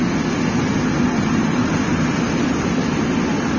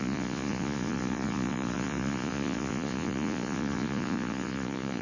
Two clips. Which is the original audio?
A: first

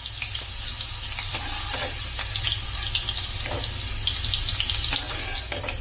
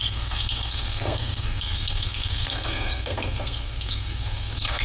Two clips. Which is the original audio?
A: first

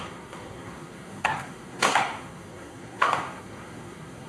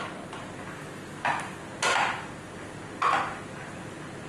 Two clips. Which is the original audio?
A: second